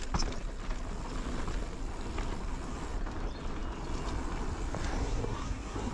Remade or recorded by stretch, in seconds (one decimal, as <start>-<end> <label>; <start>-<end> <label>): 0.0-5.0 recorded; 5.0-5.9 remade

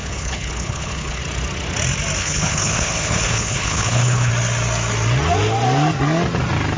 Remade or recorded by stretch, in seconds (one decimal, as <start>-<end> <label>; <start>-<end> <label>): 0.0-1.2 remade; 1.2-2.2 recorded; 2.2-4.3 remade; 4.3-6.8 recorded

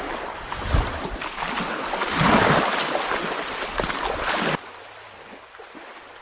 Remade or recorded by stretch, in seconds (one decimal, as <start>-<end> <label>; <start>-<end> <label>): 0.0-6.2 recorded

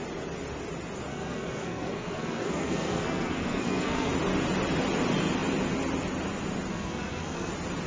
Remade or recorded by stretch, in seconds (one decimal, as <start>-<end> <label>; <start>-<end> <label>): 0.0-1.1 recorded; 1.1-4.1 remade; 4.1-6.7 recorded; 6.7-7.5 remade; 7.5-7.9 recorded